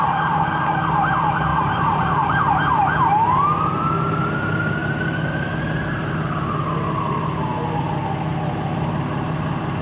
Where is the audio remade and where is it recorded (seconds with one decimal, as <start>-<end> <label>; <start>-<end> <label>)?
0.0-1.5 recorded; 1.5-2.5 remade; 2.5-9.8 recorded